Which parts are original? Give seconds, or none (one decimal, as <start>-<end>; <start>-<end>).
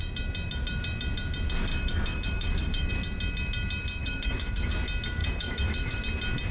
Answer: 0.0-1.7; 2.9-4.0; 4.7-5.2; 6.0-6.5